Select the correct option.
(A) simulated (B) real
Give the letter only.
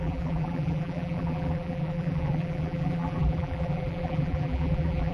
A